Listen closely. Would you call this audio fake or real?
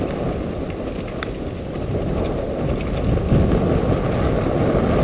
real